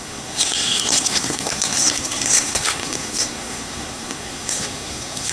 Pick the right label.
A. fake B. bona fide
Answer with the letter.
A